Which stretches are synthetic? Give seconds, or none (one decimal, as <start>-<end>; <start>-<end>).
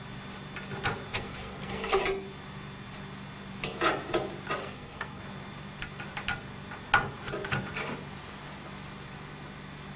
1.1-2.0; 4.6-5.2